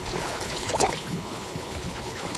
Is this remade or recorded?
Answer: remade